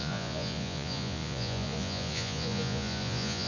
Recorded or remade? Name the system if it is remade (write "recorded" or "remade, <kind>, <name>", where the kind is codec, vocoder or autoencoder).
remade, vocoder, Vocos